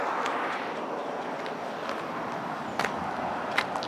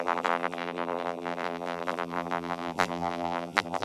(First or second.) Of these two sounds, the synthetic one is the second